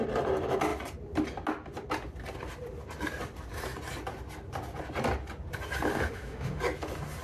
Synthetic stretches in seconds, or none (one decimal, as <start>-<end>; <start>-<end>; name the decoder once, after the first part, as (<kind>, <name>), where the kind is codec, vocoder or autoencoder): 5.9-6.6 (autoencoder, DAC-VAE)